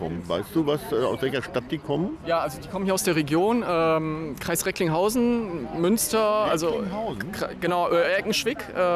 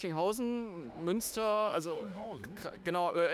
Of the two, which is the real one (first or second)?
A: first